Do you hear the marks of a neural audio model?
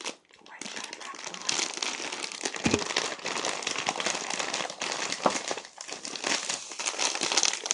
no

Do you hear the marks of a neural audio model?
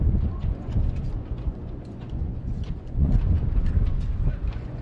yes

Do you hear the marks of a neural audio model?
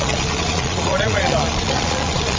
yes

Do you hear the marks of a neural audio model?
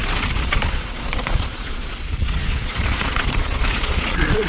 yes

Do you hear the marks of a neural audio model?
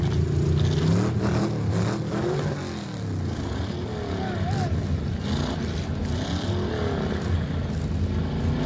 no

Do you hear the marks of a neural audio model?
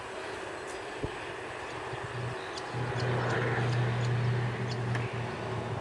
no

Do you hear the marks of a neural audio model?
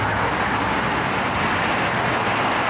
no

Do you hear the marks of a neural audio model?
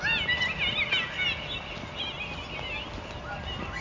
no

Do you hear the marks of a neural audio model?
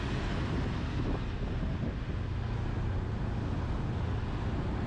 no